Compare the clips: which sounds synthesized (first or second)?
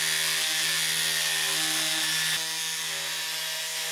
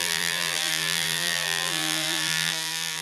second